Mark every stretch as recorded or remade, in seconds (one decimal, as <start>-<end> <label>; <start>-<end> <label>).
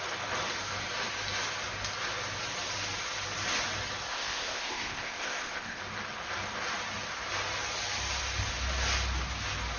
0.0-4.1 recorded; 4.1-5.8 remade; 5.8-9.8 recorded